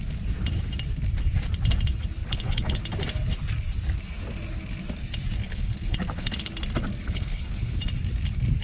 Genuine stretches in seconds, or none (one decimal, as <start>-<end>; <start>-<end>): 0.0-2.2; 2.8-5.4; 6.5-7.0; 7.8-8.6